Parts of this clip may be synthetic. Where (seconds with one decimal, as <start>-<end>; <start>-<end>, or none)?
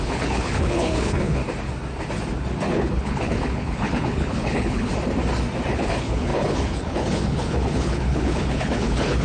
0.0-1.4; 2.7-4.9; 5.7-9.2